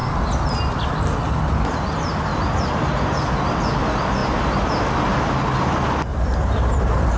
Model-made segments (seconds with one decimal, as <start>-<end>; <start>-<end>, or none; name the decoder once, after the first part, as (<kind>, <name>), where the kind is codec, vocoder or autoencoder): 2.3-3.3 (vocoder, BigVGAN v2); 6.1-7.2